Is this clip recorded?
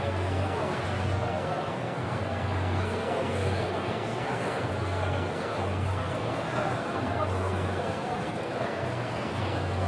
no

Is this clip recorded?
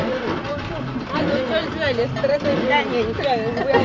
yes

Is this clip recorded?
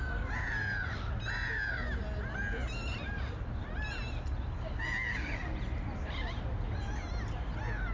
yes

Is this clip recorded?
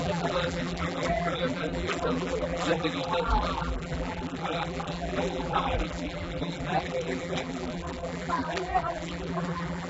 no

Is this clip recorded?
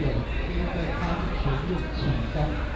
yes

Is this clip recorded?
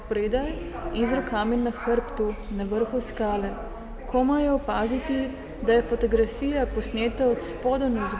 yes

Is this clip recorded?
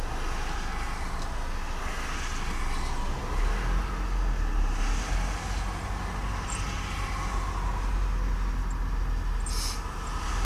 yes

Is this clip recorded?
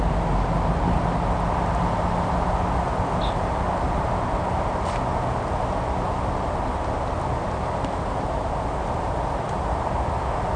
yes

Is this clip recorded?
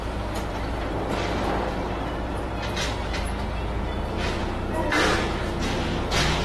no